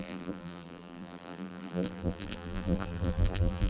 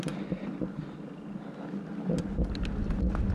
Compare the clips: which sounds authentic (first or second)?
second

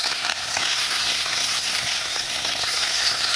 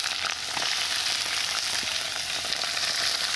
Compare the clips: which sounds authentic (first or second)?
second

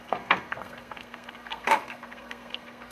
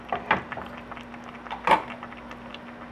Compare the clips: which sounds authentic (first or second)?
second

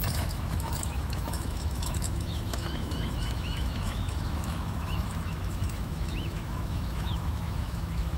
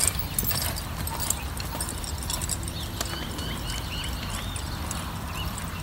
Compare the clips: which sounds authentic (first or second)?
second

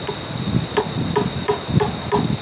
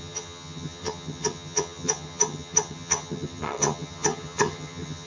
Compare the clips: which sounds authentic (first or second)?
first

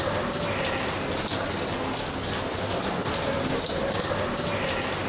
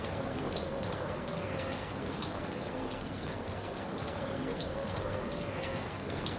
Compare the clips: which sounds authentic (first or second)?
first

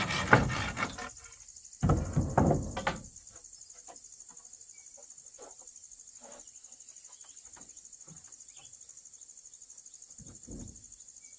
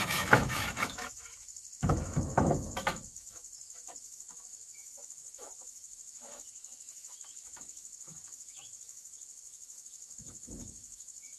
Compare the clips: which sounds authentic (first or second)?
first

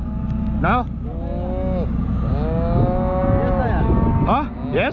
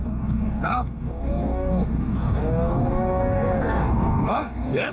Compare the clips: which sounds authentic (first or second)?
first